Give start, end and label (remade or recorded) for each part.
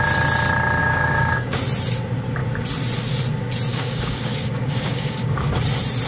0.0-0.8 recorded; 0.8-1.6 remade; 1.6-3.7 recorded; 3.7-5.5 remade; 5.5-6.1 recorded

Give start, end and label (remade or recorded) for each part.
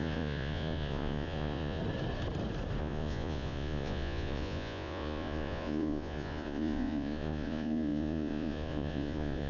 0.0-1.8 remade; 1.8-2.8 recorded; 2.8-9.5 remade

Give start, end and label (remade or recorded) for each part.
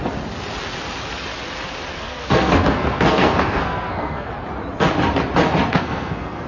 0.0-1.9 recorded; 1.9-4.3 remade; 4.3-5.7 recorded; 5.7-6.5 remade